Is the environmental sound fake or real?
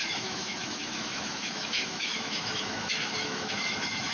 fake